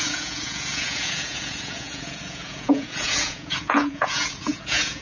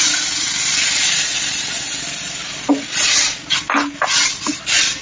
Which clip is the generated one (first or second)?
first